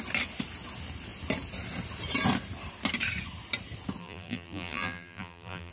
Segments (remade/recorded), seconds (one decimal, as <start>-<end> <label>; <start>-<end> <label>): 0.0-4.0 recorded; 4.0-5.7 remade